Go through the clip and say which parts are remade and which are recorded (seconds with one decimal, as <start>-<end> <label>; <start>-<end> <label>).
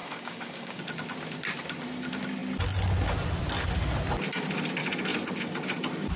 0.0-0.8 remade; 0.8-6.2 recorded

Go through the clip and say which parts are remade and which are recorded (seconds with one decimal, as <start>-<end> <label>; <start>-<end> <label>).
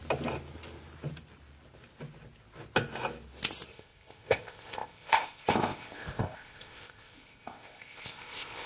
0.0-3.7 recorded; 3.7-8.7 remade